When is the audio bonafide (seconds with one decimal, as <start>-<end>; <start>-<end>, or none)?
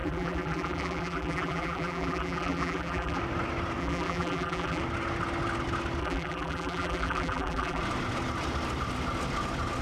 3.2-3.8; 4.8-6.0; 7.8-9.8